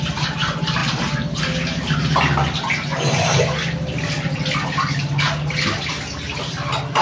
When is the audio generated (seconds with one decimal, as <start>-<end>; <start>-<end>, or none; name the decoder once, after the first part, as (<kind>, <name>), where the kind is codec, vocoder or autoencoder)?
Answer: none